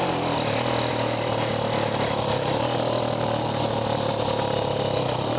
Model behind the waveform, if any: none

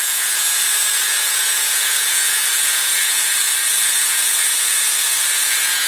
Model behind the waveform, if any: vocoder, Vocos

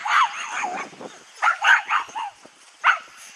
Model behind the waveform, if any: none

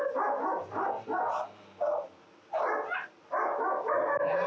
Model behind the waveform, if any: none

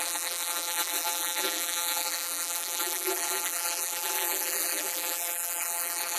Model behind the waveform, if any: vocoder, BigVGAN v2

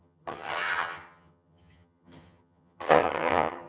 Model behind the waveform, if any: vocoder, HiFi-GAN